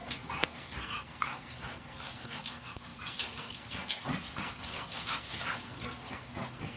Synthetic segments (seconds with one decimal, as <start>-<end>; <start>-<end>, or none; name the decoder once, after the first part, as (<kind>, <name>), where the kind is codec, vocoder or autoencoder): 0.0-6.8 (codec, SNAC)